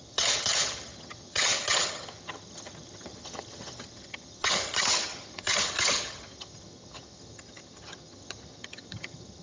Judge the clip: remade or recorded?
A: remade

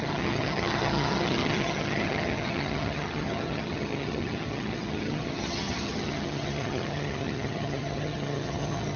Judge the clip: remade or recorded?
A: remade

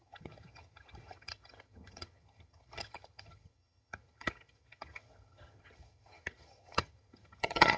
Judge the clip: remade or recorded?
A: remade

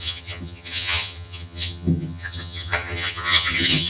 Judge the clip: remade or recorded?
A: remade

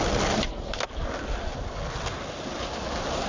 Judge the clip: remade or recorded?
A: recorded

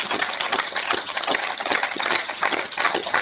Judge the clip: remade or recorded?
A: remade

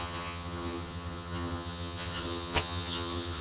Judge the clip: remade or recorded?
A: remade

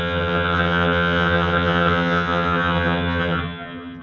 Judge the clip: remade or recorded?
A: remade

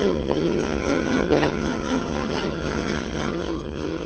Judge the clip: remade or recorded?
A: remade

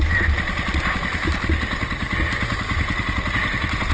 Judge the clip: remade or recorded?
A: recorded